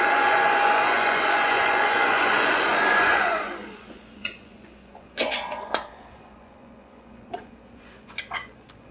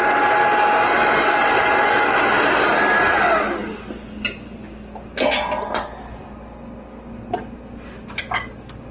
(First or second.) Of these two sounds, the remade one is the first